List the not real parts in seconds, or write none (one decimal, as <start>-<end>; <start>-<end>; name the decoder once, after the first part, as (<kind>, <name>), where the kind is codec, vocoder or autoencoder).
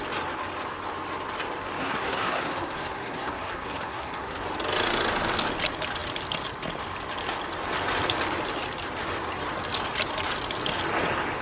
1.8-4.4 (codec, SNAC)